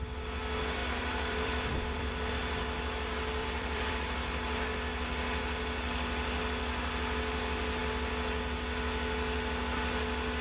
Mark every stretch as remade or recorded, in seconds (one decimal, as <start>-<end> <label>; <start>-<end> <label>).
0.0-0.8 recorded; 0.8-2.3 remade; 2.3-3.4 recorded; 3.4-3.9 remade; 3.9-10.4 recorded